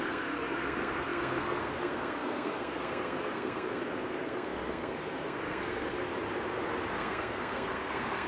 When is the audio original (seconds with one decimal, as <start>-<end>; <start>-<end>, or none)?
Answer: 6.1-6.9